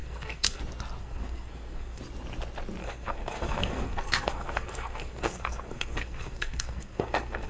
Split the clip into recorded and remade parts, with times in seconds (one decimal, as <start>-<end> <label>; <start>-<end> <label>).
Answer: 0.0-0.6 remade; 0.6-1.0 recorded; 1.0-2.0 remade; 2.0-2.8 recorded; 2.8-7.5 remade